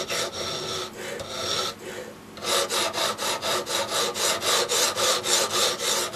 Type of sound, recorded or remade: recorded